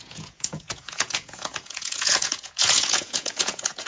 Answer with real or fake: fake